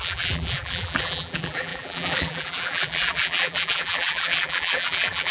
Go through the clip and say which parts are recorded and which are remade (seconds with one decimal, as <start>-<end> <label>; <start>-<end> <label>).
0.0-5.3 remade